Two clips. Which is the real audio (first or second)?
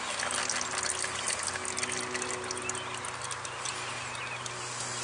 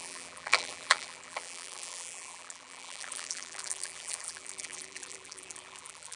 first